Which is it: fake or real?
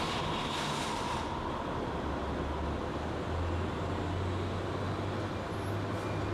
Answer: real